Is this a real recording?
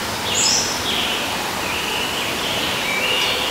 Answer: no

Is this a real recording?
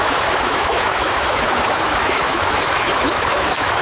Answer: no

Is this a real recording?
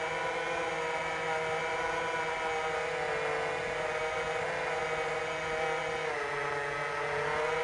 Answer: yes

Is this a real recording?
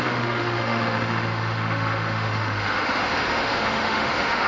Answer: no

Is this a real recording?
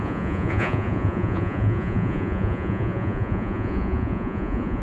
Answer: no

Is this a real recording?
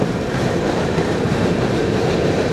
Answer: no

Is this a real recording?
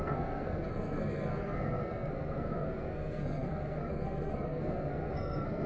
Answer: no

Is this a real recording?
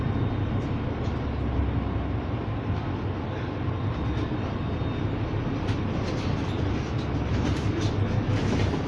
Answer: yes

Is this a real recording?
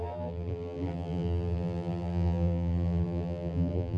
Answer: no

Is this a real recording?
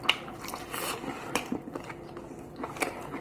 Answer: no